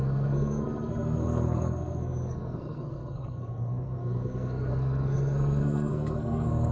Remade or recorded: remade